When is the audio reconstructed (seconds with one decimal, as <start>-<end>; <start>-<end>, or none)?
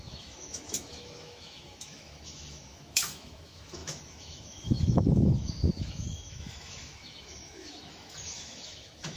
0.0-9.2